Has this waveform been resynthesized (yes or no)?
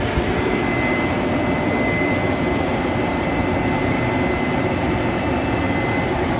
no